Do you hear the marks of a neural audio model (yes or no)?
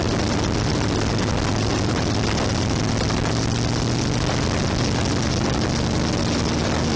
no